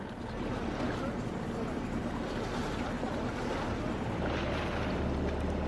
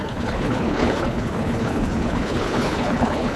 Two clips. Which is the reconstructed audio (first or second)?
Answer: second